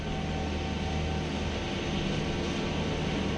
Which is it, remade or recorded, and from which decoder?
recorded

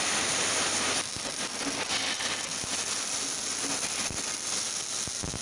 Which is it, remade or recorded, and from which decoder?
recorded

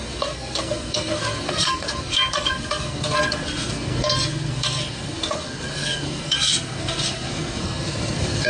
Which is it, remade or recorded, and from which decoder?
remade, codec, SNAC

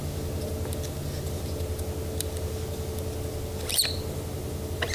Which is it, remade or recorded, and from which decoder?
recorded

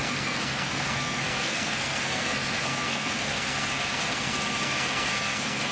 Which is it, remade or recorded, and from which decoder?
remade, codec, SNAC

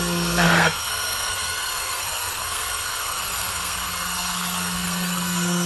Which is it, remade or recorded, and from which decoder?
remade, codec, SNAC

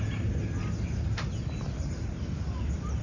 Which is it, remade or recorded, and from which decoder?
recorded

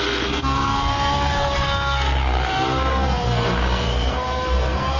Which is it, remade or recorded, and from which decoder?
remade, codec, SNAC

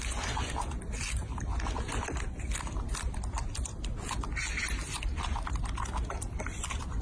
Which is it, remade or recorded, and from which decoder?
recorded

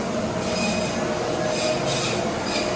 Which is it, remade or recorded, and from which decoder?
recorded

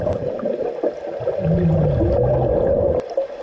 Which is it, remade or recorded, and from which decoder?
recorded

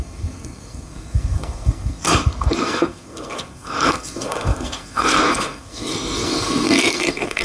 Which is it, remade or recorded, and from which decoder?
remade, codec, SNAC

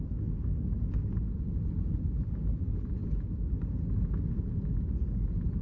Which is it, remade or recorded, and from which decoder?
recorded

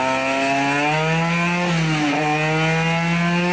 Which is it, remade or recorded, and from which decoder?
recorded